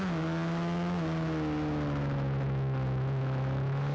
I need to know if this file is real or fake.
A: real